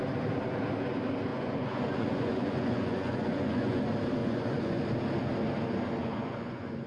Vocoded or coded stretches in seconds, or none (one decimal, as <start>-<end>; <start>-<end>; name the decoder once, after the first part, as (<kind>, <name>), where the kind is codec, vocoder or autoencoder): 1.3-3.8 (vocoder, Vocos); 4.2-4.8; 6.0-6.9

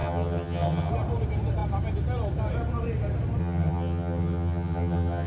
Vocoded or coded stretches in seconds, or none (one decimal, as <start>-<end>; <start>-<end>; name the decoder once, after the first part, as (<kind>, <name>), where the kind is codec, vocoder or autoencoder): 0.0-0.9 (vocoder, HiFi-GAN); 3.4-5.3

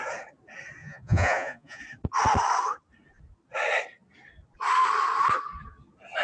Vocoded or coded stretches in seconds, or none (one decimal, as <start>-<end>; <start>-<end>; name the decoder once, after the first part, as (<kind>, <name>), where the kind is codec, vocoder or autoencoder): 0.8-1.8 (vocoder, Vocos)

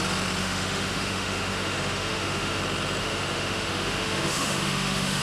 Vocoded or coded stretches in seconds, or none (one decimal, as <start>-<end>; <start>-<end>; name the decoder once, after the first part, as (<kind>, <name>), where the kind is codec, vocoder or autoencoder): 0.4-2.6 (autoencoder, DAC-VAE); 3.0-5.2